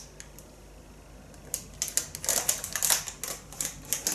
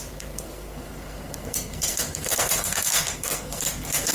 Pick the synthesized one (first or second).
second